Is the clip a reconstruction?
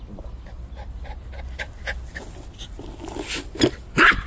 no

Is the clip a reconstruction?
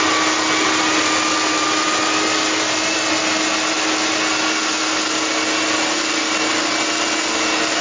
no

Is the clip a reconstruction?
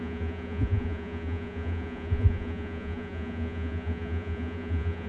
yes